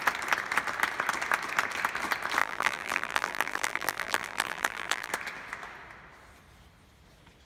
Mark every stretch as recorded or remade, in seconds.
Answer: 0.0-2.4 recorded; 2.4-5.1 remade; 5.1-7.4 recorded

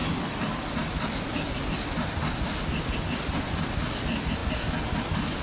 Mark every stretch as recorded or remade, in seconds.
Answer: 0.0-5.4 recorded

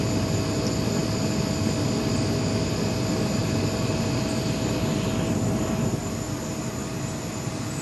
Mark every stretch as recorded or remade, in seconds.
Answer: 0.0-3.4 recorded; 3.4-6.0 remade; 6.0-7.8 recorded

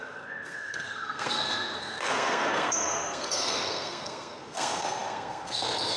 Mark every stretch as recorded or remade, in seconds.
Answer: 0.0-6.0 remade

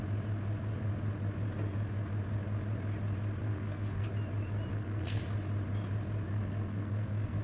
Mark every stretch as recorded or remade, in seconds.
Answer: 0.0-3.4 recorded; 3.4-4.1 remade; 4.1-4.7 recorded; 4.7-5.2 remade; 5.2-6.3 recorded; 6.3-7.4 remade

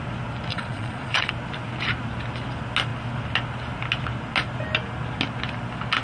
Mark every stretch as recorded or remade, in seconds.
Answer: 0.0-0.5 recorded; 0.5-1.3 remade; 1.3-6.0 recorded

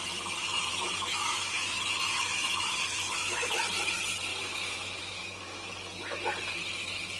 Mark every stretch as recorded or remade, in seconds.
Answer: 0.0-0.4 recorded; 0.4-3.6 remade; 3.6-4.3 recorded; 4.3-5.7 remade; 5.7-7.2 recorded

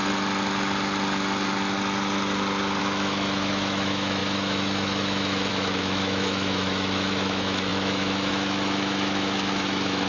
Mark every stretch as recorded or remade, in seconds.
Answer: 0.0-2.8 recorded; 2.8-10.1 remade